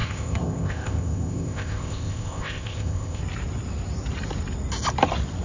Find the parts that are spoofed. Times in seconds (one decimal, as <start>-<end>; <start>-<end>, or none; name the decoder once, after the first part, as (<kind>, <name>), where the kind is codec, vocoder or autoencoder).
0.0-3.2 (codec, ZipCodec)